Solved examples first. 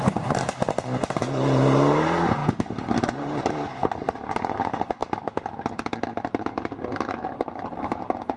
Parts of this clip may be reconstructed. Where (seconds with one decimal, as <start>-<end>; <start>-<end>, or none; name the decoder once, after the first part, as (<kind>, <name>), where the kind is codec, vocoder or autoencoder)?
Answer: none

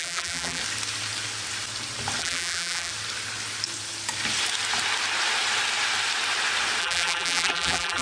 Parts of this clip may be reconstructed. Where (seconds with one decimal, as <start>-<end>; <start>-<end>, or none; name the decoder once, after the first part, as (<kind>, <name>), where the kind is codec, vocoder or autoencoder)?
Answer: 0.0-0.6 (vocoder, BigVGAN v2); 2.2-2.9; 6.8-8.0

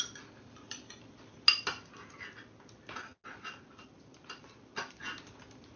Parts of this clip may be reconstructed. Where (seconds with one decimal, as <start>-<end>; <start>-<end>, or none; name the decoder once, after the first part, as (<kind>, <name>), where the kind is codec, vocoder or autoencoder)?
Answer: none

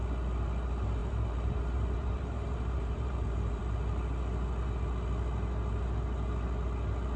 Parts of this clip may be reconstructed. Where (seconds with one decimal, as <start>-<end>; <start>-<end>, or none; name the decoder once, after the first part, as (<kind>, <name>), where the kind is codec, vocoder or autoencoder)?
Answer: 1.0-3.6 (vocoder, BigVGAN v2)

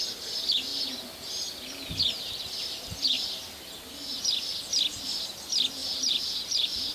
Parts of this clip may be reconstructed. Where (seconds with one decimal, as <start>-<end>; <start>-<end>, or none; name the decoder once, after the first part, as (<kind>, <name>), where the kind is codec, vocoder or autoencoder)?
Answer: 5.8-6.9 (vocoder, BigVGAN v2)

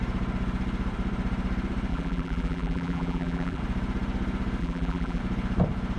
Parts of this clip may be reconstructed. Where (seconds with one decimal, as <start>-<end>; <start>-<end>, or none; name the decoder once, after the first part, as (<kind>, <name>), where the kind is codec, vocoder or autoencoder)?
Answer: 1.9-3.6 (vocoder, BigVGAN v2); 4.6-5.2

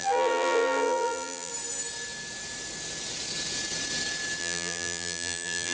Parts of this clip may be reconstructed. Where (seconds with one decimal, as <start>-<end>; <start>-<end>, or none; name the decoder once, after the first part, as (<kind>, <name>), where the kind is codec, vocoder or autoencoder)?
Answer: 0.0-1.5 (vocoder, BigVGAN v2); 4.4-5.7